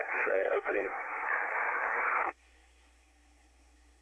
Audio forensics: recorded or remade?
remade